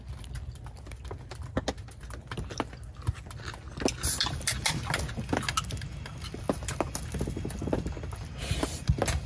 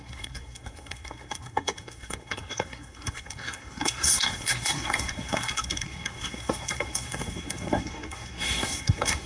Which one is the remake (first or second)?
second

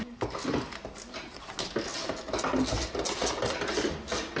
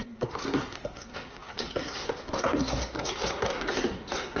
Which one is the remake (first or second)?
second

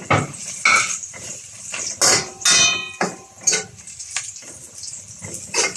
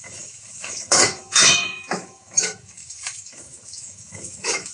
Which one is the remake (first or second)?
second